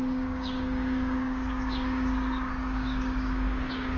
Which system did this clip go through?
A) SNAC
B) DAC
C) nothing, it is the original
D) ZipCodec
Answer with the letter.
B